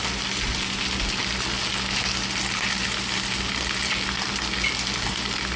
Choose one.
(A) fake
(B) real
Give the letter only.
B